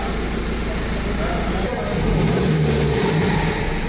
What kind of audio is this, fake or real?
real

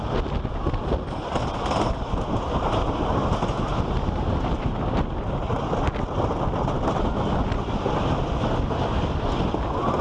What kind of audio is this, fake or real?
real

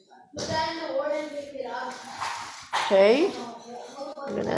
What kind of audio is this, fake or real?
real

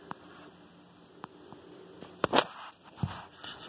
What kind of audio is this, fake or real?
real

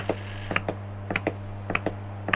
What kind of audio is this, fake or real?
real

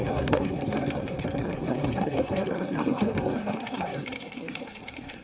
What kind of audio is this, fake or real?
fake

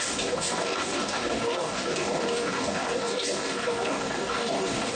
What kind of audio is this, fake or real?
fake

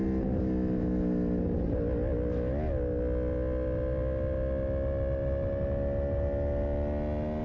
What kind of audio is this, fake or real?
real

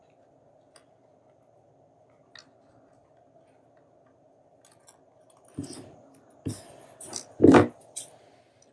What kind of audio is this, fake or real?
real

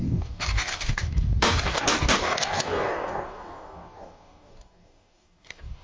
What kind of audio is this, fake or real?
fake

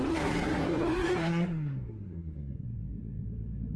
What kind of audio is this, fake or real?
fake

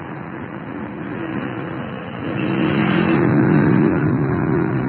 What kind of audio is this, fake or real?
fake